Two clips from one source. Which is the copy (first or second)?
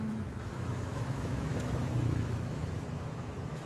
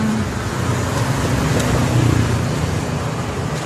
first